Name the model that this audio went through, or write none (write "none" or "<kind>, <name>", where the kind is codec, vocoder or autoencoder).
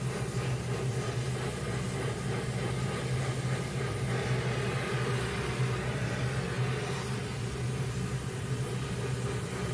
none